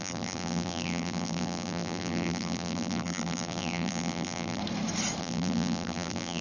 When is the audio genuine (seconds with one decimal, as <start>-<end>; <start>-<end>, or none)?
4.6-5.2